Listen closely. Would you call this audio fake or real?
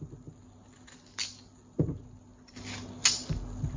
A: real